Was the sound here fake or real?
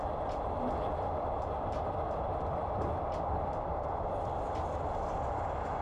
real